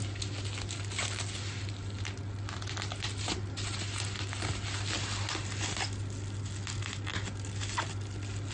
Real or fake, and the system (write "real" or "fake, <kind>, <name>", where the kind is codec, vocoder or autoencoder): real